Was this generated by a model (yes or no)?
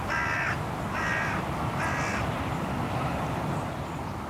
no